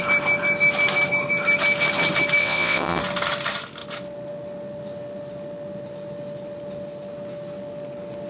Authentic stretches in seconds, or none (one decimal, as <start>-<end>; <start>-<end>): 0.0-2.4; 3.0-8.3